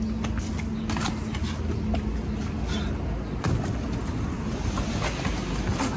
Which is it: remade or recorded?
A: recorded